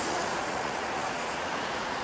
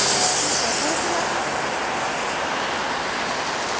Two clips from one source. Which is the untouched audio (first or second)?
second